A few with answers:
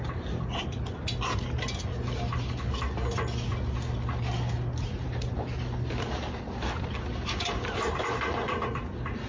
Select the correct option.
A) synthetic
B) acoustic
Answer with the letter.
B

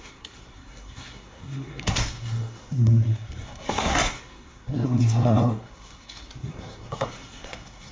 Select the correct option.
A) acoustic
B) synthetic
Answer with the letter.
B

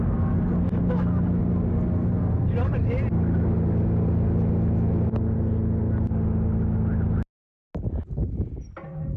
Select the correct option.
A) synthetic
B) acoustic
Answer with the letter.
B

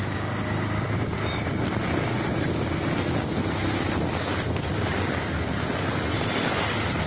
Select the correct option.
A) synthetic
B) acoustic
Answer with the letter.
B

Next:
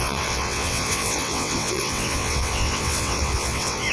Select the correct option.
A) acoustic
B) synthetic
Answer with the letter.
B